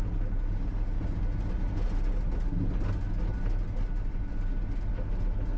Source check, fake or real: real